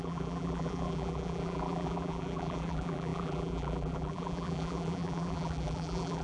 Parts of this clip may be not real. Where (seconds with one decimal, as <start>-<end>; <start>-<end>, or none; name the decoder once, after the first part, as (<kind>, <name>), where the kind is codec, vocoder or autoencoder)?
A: 0.0-6.2 (vocoder, BigVGAN v2)